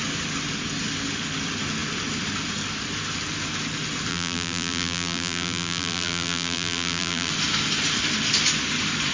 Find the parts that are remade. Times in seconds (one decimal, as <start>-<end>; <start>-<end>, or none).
4.1-7.3